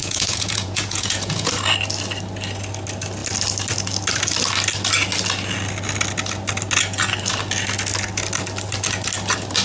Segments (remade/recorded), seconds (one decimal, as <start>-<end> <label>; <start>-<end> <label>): 0.0-1.5 remade; 1.5-9.6 recorded